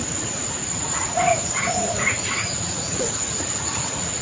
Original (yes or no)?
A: no